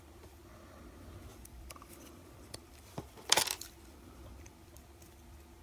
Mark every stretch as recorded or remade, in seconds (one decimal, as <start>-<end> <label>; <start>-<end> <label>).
0.0-1.3 recorded; 1.3-4.7 remade; 4.7-5.6 recorded